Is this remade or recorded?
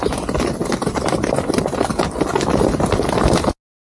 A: recorded